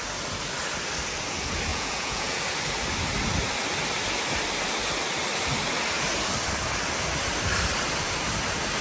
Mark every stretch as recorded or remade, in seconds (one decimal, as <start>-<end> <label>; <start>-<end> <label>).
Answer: 0.0-1.7 recorded; 1.7-2.4 remade; 2.4-8.8 recorded